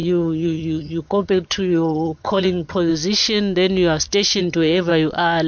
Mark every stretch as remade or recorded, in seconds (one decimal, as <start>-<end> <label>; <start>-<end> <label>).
0.0-2.9 remade; 2.9-4.4 recorded; 4.4-4.9 remade; 4.9-5.5 recorded